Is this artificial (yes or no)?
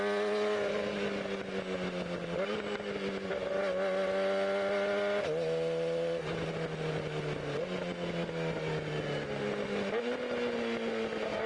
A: no